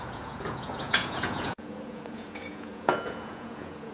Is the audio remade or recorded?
remade